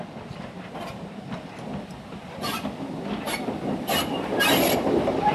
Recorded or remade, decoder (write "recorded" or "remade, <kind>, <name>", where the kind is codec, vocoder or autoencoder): recorded